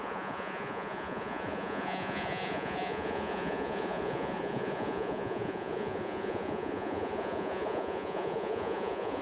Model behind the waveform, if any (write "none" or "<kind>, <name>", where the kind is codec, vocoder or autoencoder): vocoder, Vocos